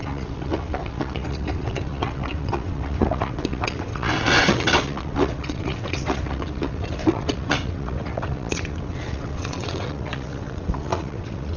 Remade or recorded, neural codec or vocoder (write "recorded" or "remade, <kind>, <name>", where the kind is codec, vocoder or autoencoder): remade, vocoder, WaveNeXt